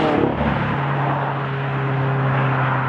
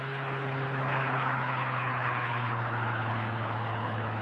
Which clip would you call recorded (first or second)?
first